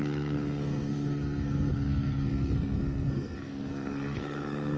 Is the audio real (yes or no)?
no